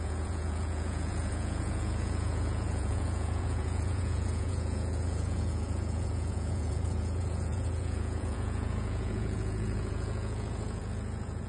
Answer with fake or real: fake